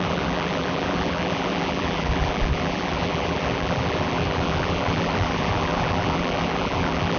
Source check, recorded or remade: remade